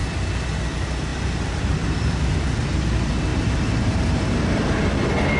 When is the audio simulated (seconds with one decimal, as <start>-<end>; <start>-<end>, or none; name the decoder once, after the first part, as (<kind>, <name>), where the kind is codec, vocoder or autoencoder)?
1.1-2.3 (vocoder, BigVGAN v2); 3.3-4.6